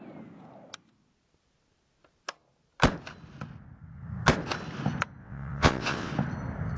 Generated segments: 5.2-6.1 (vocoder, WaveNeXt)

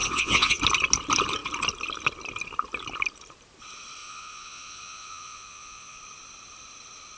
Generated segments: 0.0-0.6 (vocoder, Vocos); 4.0-6.0

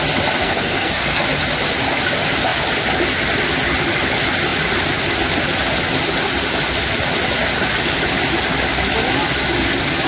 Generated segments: 0.4-1.2 (codec, SNAC)